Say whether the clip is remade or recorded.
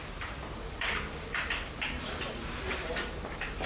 recorded